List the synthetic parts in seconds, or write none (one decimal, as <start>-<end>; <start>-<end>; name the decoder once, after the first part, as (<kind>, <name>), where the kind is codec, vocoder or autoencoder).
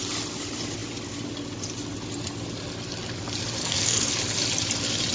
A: 3.6-4.1 (codec, SNAC)